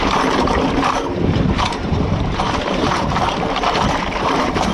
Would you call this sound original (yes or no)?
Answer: no